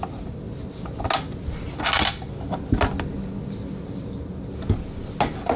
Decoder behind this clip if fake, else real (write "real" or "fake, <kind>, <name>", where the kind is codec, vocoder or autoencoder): real